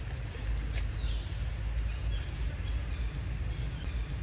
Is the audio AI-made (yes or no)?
no